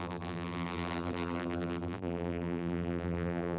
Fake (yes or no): yes